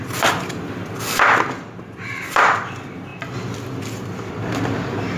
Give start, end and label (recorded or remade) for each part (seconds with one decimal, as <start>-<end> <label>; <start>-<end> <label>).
0.0-5.2 recorded